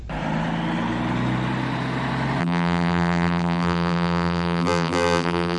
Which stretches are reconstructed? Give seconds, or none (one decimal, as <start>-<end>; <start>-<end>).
2.4-5.6